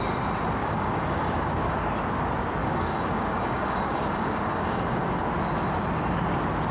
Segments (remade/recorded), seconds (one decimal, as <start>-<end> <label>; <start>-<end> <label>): 0.0-0.6 recorded; 0.6-1.9 remade; 1.9-2.6 recorded; 2.6-5.2 remade; 5.2-6.7 recorded